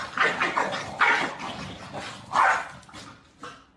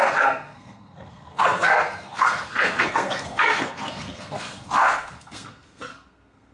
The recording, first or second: first